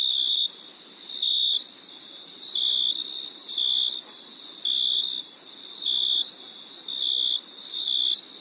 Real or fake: real